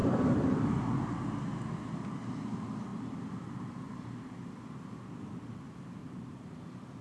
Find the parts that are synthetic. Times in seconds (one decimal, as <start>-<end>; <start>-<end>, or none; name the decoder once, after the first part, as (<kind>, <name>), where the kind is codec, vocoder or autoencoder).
6.0-6.6 (vocoder, BigVGAN v2)